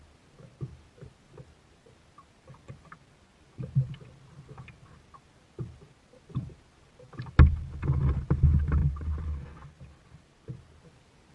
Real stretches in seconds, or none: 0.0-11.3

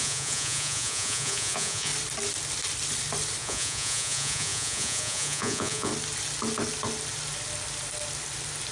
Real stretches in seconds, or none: 1.9-3.4; 5.9-8.7

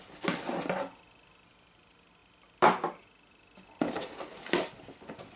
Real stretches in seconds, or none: 0.0-5.4

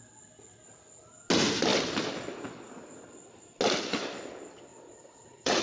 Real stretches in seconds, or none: 0.0-4.7

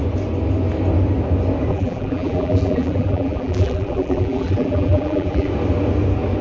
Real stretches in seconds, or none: 0.0-1.7; 5.5-6.4

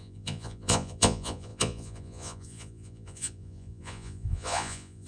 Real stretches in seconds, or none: none